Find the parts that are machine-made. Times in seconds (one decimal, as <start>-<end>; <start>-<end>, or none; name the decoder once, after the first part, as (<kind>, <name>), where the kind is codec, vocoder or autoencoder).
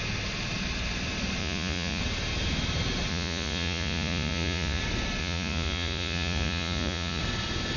1.4-2.0 (vocoder, Vocos); 3.1-4.8; 5.2-7.2